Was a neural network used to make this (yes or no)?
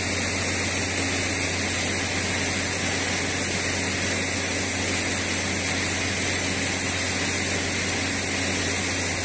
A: no